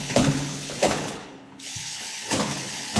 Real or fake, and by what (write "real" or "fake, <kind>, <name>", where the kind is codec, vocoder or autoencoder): fake, codec, HILCodec